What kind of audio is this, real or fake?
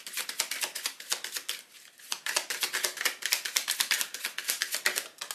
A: fake